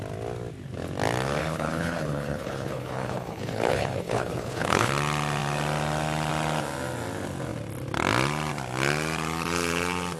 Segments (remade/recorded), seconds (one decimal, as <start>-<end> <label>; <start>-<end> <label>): 0.0-1.4 recorded; 1.4-4.9 remade; 4.9-10.2 recorded